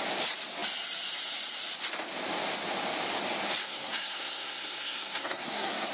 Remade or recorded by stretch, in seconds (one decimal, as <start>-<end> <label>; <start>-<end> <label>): 0.0-3.6 recorded; 3.6-5.9 remade